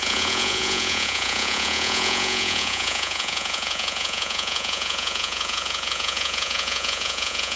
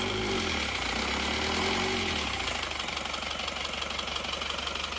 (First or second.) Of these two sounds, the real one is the second